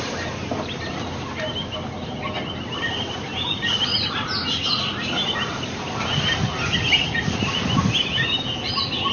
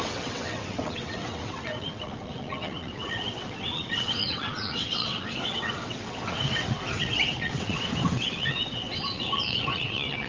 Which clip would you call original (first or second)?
first